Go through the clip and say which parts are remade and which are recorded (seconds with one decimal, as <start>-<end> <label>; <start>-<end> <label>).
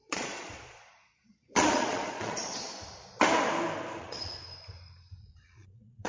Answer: 0.0-2.7 remade; 2.7-4.0 recorded; 4.0-4.4 remade; 4.4-5.2 recorded; 5.2-6.1 remade